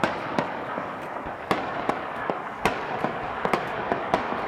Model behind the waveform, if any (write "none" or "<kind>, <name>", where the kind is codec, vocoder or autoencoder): codec, DAC